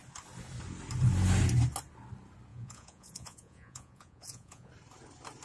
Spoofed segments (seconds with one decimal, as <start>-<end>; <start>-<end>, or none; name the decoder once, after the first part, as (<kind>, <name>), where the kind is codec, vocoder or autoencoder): 2.5-4.7 (vocoder, Vocos)

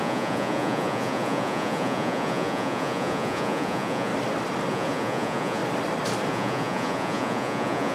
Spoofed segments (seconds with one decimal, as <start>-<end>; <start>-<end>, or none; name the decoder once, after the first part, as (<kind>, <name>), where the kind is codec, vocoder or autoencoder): 0.0-4.1 (vocoder, Vocos); 4.7-5.6; 6.3-7.9